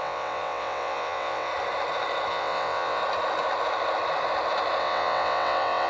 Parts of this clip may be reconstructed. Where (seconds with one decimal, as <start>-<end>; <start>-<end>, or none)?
0.0-1.5; 2.3-3.0; 4.8-5.9